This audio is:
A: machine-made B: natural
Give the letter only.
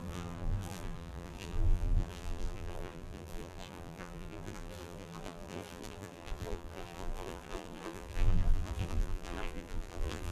A